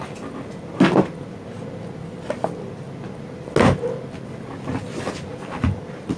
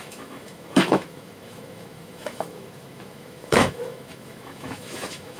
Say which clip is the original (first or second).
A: first